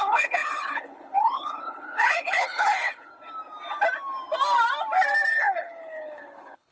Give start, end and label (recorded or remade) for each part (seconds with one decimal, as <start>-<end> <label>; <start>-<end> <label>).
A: 0.0-3.1 remade; 3.1-5.3 recorded; 5.3-6.7 remade

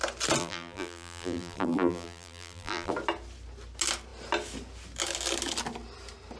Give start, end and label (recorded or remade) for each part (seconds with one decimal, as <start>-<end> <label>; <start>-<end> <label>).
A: 0.0-0.4 recorded; 0.4-2.9 remade; 2.9-6.4 recorded

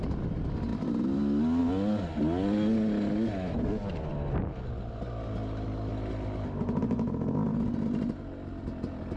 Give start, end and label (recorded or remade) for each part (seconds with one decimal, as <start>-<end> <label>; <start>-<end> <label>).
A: 0.0-9.2 recorded

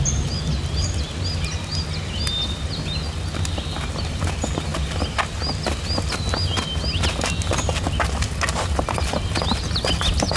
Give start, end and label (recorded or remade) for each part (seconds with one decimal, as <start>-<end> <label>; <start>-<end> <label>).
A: 0.0-10.4 recorded

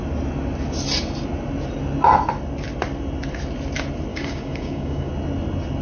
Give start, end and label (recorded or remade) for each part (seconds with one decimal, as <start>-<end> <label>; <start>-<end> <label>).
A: 0.0-4.1 recorded; 4.1-5.1 remade; 5.1-5.8 recorded

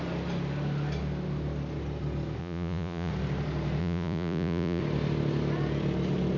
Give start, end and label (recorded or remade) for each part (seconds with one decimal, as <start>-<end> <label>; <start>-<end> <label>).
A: 0.0-2.4 recorded; 2.4-3.1 remade; 3.1-3.8 recorded; 3.8-4.8 remade; 4.8-6.4 recorded